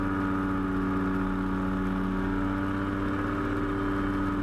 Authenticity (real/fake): real